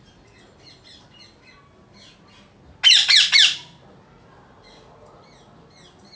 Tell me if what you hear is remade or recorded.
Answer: recorded